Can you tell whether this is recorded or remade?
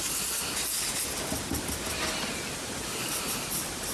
recorded